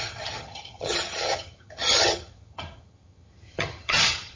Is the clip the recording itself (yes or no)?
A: no